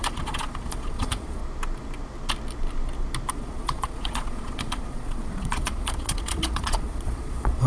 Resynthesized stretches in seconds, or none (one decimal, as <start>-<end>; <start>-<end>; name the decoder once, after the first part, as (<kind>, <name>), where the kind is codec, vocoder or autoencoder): 0.0-1.4 (vocoder, Vocos); 3.3-7.7